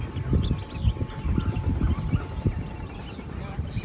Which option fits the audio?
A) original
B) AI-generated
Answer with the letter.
A